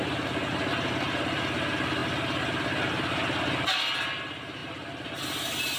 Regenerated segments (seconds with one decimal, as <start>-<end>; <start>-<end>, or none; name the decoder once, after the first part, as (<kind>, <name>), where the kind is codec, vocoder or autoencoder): 2.0-2.9 (vocoder, BigVGAN v2); 4.6-5.8